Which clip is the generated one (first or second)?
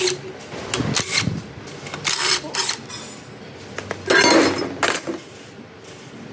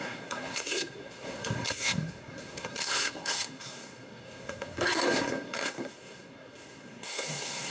second